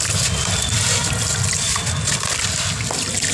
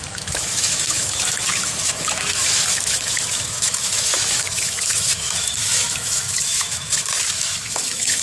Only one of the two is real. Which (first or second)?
first